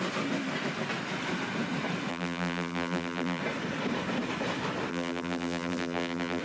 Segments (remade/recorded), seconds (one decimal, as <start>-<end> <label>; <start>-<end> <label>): 0.0-2.1 recorded; 2.1-3.4 remade; 3.4-4.9 recorded; 4.9-6.4 remade